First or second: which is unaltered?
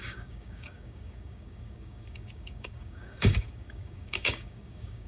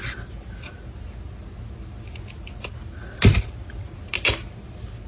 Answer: second